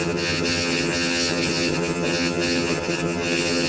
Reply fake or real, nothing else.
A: fake